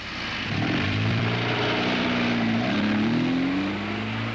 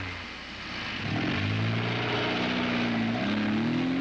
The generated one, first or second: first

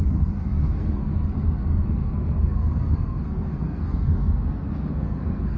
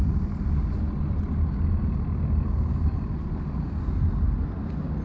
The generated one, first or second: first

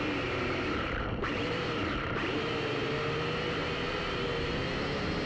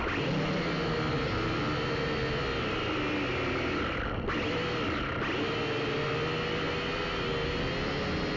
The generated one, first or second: first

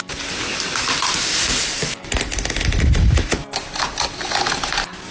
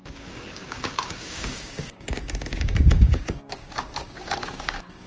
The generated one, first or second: second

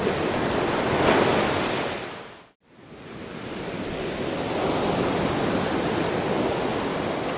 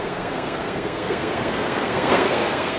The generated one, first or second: second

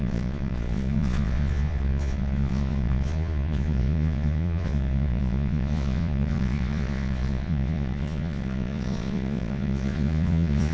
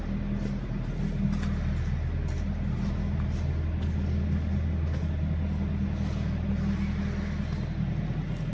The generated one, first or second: first